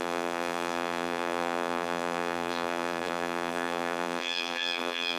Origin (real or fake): fake